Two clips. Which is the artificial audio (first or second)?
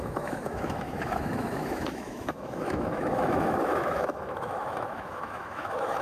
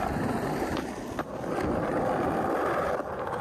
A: first